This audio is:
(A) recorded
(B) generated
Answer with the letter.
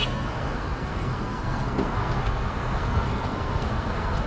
B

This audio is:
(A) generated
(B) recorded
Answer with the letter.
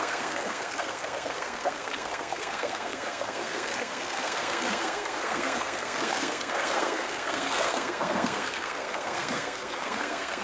A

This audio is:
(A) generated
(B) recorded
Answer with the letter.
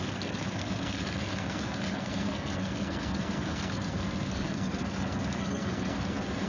A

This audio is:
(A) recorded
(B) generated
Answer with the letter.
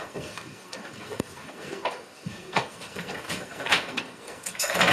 B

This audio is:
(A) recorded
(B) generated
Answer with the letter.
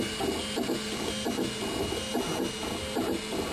A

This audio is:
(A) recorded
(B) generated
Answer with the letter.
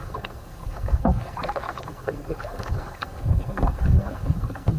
B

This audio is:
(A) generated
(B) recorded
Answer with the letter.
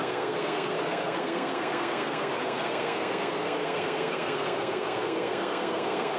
A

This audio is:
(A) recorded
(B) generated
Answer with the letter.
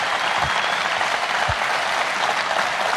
A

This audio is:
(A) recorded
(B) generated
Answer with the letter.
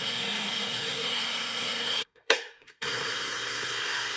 B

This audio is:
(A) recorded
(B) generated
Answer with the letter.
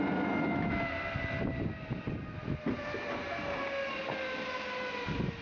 A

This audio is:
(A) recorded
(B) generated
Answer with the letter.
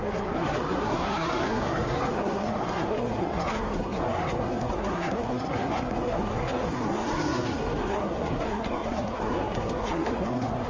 B